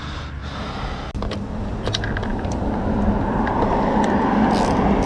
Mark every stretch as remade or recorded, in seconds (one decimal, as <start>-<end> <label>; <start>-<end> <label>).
0.0-5.1 recorded